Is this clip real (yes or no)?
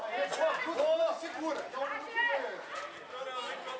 yes